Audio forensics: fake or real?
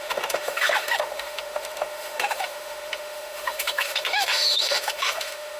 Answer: fake